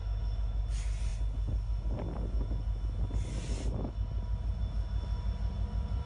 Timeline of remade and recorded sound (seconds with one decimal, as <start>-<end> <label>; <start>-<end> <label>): 0.0-0.6 remade; 0.6-6.1 recorded